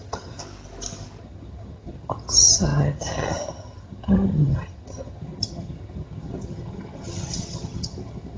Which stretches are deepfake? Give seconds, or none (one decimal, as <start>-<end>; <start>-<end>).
0.0-0.4; 1.2-8.4